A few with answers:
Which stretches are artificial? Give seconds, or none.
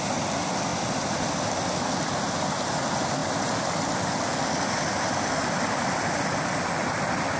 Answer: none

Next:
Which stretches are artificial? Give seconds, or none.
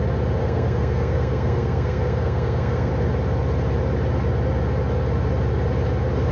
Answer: 0.4-2.9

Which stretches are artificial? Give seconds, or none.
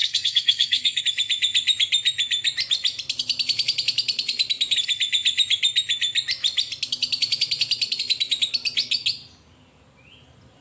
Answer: 0.0-1.0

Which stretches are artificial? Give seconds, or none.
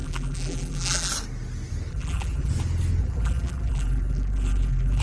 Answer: 0.0-1.1; 1.9-2.5; 3.0-5.0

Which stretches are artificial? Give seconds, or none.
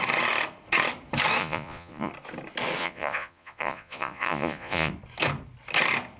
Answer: 1.4-2.1; 2.8-4.9